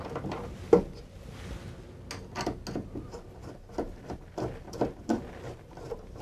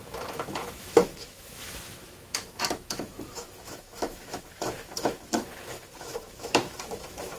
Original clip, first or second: first